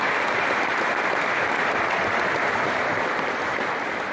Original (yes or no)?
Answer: no